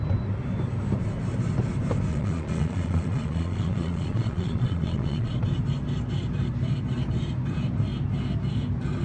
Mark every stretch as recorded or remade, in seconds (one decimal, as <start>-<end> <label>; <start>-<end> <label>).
0.0-2.1 recorded; 2.1-5.3 remade; 5.3-9.0 recorded